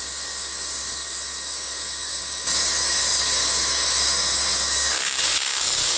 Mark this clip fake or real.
fake